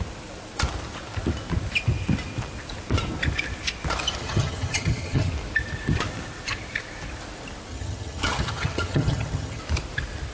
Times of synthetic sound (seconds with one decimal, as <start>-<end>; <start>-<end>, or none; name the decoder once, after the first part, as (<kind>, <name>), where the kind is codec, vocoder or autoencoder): 4.2-5.3 (vocoder, HiFi-GAN); 7.7-9.6